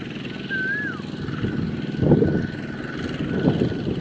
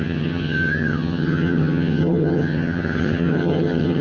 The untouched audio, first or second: first